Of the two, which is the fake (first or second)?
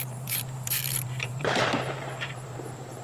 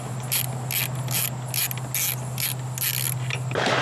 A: first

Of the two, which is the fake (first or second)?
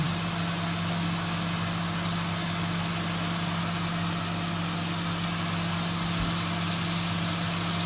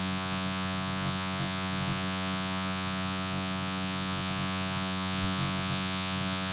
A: second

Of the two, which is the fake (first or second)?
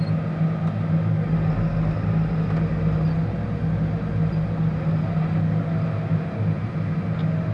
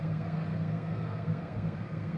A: second